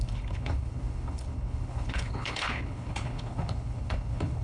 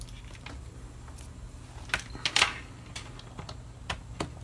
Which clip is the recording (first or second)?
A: second